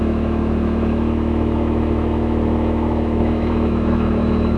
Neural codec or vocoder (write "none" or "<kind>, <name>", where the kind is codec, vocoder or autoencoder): autoencoder, DAC-VAE